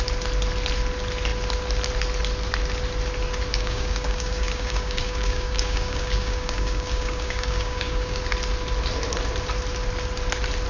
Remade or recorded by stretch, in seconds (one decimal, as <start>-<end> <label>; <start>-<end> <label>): 0.0-3.5 recorded; 3.5-8.2 remade; 8.2-10.7 recorded